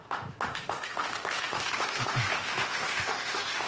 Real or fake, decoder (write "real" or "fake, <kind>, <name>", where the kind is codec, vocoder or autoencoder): fake, autoencoder, DAC-VAE